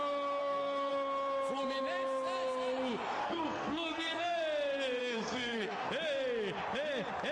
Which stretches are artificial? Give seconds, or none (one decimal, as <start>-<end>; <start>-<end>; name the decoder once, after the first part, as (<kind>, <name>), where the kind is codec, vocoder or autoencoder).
0.4-0.9 (codec, SNAC); 3.2-4.4; 5.0-5.9